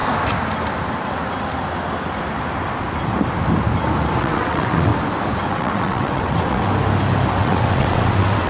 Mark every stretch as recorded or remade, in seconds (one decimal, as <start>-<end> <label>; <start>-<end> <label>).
0.0-4.2 recorded; 4.2-4.9 remade; 4.9-5.5 recorded; 5.5-6.7 remade; 6.7-7.4 recorded; 7.4-8.5 remade